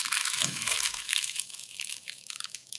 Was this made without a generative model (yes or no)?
no